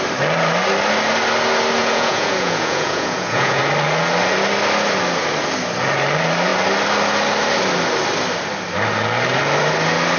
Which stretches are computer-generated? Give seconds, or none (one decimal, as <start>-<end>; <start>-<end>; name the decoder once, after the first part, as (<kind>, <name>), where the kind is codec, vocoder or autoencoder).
1.8-3.6 (vocoder, Vocos)